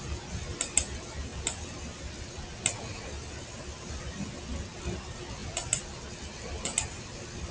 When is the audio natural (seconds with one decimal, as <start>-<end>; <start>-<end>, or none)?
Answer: 0.0-7.5